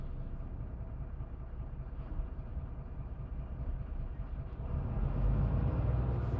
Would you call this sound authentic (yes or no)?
yes